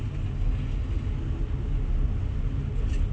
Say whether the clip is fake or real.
real